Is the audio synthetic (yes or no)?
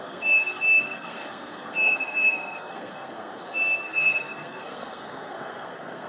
yes